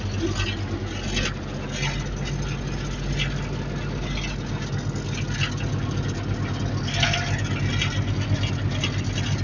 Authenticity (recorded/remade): recorded